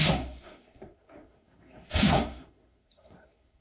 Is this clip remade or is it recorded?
remade